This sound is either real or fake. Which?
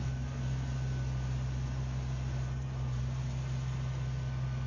real